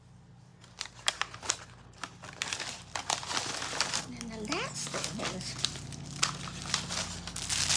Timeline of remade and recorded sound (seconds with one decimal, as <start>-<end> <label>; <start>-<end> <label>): 0.0-7.8 recorded